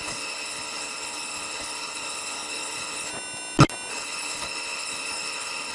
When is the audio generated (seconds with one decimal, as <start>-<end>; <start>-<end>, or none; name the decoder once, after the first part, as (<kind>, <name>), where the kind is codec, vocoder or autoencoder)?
0.0-3.1 (codec, HILCodec); 3.9-5.7